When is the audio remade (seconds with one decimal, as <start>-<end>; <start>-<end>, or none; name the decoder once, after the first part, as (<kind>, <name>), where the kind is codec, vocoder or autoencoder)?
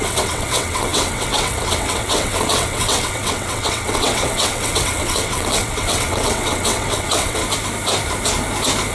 0.0-7.4 (vocoder, WaveNeXt)